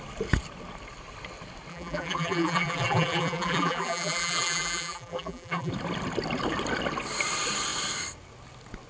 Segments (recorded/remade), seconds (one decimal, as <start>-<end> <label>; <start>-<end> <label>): 0.0-1.7 recorded; 1.7-5.7 remade; 5.7-8.9 recorded